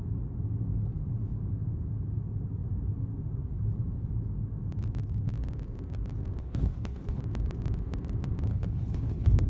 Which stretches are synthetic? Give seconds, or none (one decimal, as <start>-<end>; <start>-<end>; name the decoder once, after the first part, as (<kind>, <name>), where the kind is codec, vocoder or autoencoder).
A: 6.4-7.2 (codec, HILCodec); 8.5-9.5